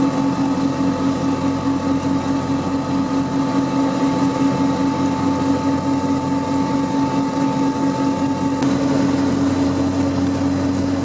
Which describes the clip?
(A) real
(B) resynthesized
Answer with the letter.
A